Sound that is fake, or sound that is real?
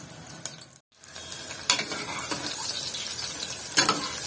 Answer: real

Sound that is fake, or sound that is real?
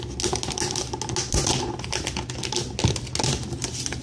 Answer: real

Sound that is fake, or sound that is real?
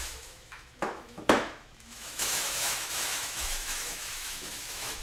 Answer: fake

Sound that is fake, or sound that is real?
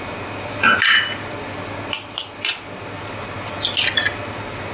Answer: real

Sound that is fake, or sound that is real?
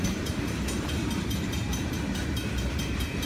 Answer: fake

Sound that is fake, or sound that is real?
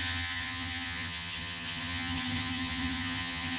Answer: fake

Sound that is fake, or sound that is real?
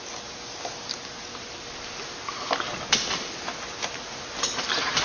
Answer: real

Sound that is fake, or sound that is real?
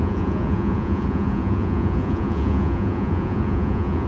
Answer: fake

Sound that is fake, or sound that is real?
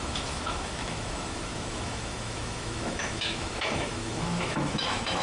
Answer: fake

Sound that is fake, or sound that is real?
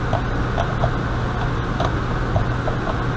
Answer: real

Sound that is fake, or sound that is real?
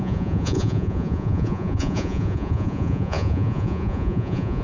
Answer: fake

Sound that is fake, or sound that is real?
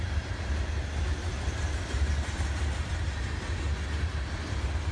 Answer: real